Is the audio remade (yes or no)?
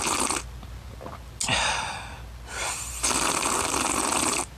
no